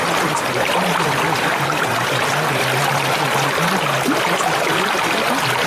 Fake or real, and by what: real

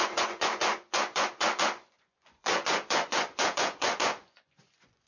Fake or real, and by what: fake, vocoder, Vocos